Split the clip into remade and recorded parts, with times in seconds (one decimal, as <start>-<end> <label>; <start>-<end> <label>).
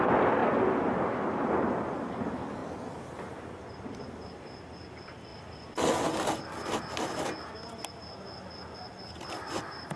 0.0-2.6 recorded; 2.6-3.3 remade; 3.3-5.3 recorded; 5.3-5.9 remade; 5.9-10.0 recorded